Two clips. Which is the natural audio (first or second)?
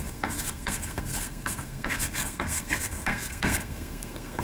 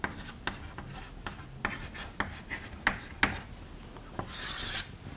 second